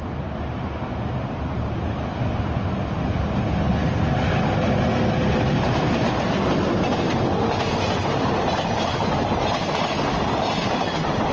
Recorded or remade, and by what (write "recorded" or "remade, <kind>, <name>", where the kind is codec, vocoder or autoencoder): recorded